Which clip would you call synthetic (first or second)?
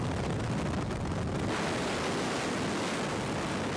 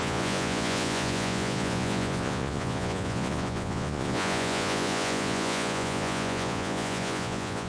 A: second